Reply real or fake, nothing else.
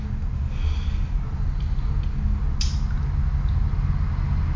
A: real